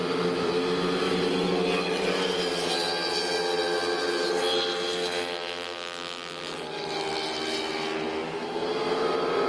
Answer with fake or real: real